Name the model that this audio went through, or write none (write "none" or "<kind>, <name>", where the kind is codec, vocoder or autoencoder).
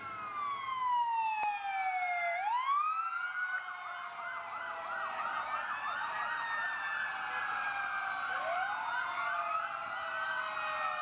none